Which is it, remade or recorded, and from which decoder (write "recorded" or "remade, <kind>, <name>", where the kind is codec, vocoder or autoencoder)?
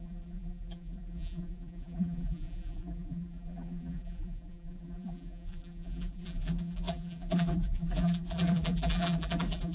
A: remade, vocoder, BigVGAN v2